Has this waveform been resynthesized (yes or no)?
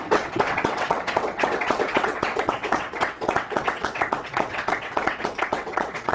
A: yes